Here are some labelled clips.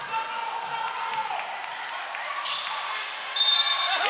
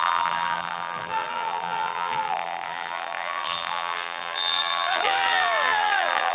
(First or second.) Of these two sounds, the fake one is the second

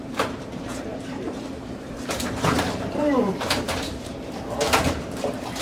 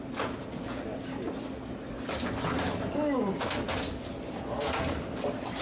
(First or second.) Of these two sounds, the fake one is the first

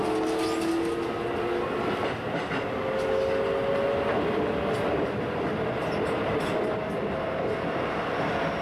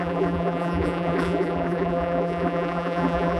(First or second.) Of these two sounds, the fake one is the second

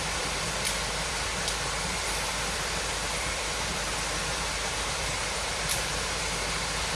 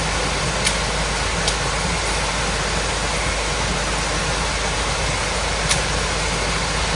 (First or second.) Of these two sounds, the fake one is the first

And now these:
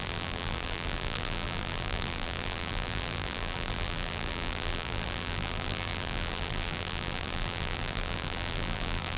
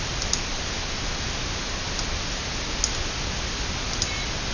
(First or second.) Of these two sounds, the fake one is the first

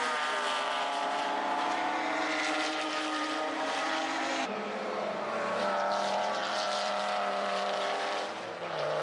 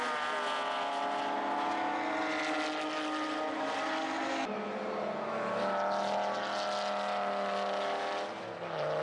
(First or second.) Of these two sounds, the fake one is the first